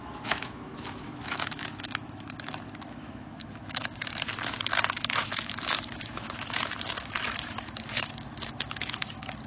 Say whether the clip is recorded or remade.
remade